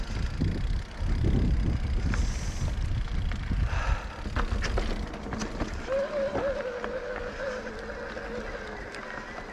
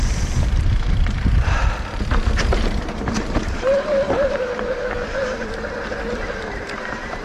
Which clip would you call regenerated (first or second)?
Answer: second